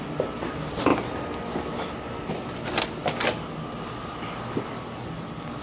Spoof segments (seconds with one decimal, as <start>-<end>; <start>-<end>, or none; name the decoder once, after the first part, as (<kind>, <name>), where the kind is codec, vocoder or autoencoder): none